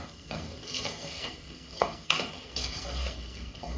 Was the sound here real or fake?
fake